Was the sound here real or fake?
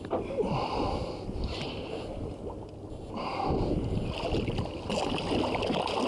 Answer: real